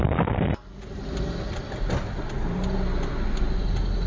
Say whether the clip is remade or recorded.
recorded